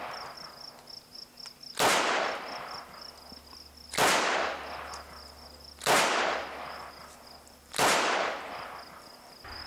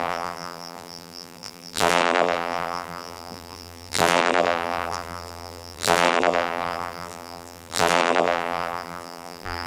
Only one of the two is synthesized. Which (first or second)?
second